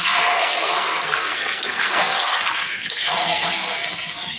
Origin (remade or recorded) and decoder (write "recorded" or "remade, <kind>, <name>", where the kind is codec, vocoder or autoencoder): remade, codec, SNAC